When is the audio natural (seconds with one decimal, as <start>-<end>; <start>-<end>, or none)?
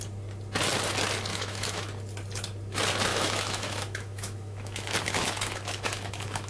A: 0.0-1.3; 1.9-3.1